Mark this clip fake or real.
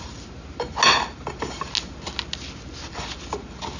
real